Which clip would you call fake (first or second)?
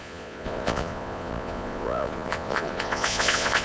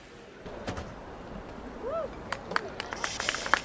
first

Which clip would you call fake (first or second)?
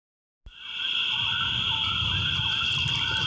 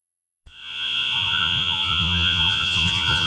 second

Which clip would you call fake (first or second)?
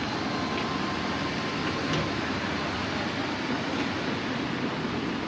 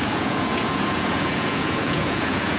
second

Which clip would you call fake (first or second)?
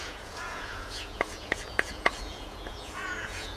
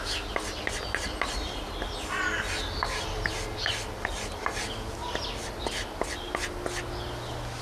first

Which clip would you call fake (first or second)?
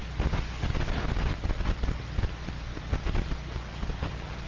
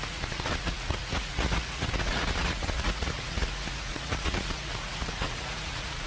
second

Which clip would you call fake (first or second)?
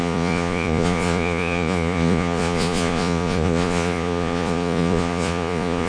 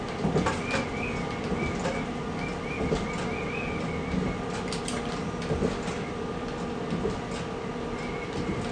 first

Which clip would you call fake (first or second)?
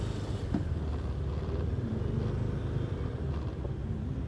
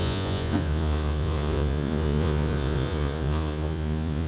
second